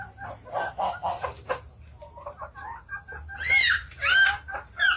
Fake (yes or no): no